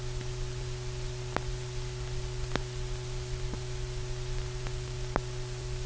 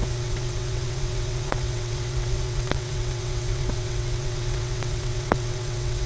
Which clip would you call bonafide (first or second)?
first